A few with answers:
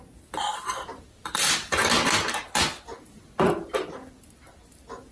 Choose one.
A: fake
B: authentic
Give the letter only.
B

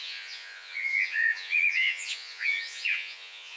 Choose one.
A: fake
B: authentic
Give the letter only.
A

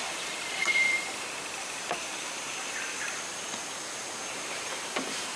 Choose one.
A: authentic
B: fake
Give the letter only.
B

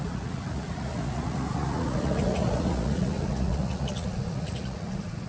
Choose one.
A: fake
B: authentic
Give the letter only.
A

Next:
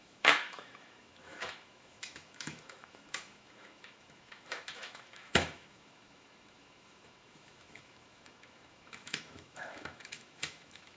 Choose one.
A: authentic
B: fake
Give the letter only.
B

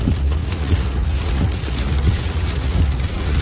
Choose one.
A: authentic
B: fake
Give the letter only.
B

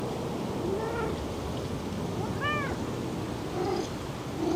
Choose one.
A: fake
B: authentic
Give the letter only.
B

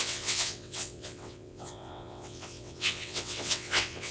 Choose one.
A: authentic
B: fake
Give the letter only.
B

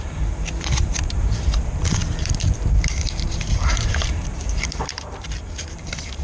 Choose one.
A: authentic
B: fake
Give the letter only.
B